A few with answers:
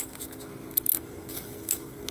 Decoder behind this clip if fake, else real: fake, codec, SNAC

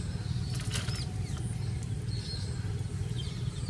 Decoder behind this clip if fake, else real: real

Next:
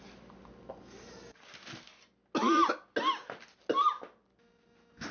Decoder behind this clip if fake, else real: real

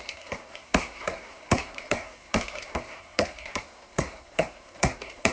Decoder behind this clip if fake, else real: fake, codec, SNAC